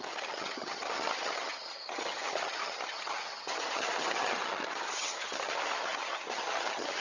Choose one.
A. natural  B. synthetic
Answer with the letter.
B